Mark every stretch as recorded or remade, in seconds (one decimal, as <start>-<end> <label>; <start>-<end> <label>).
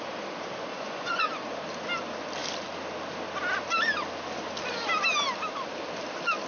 0.0-0.7 recorded; 0.7-1.3 remade; 1.3-6.5 recorded